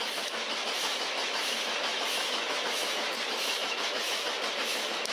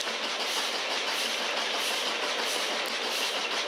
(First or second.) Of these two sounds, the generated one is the first